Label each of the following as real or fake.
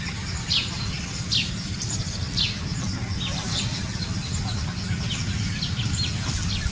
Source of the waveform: real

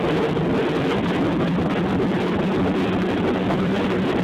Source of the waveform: fake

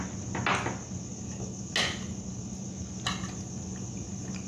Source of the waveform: real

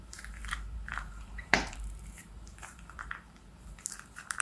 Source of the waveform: fake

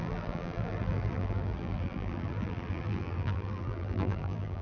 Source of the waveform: fake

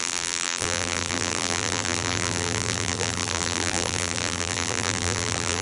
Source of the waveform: fake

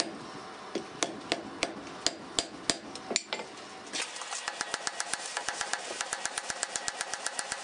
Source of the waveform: real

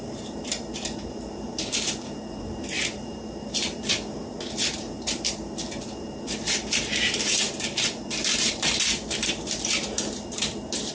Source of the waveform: fake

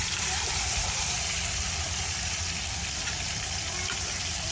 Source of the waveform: fake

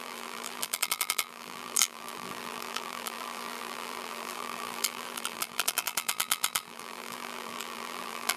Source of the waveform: fake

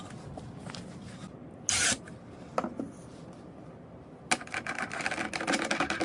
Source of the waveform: real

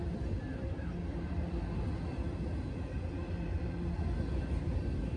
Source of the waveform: real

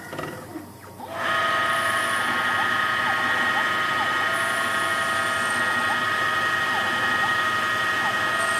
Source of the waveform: real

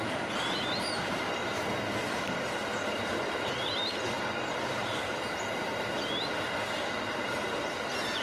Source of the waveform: fake